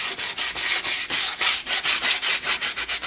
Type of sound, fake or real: real